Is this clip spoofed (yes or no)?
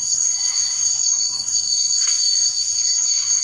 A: yes